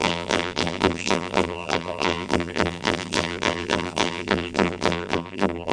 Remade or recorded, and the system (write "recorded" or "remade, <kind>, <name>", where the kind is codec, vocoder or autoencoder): remade, vocoder, BigVGAN v2